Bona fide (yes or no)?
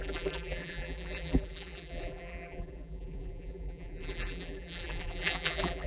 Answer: no